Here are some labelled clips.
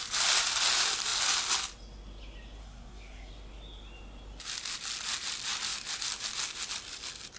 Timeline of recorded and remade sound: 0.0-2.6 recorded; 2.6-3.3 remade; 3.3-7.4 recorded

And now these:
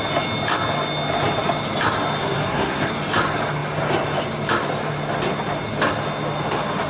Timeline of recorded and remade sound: 0.0-2.2 recorded; 2.2-2.9 remade; 2.9-6.9 recorded

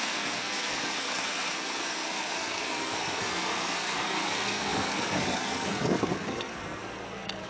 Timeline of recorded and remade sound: 0.0-7.5 remade

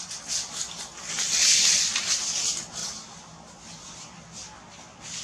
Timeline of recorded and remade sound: 0.0-5.2 recorded

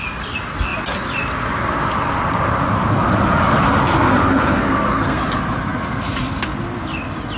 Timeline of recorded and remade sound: 0.0-4.2 recorded; 4.2-5.2 remade; 5.2-7.4 recorded

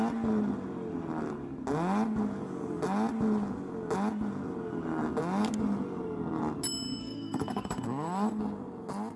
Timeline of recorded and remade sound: 0.0-7.0 recorded; 7.0-8.4 remade; 8.4-9.2 recorded